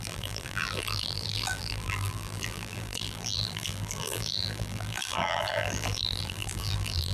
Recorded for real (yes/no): no